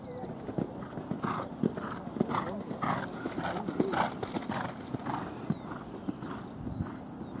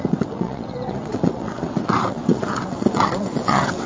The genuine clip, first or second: first